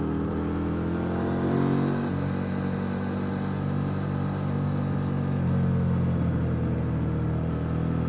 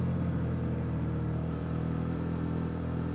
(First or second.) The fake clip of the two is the second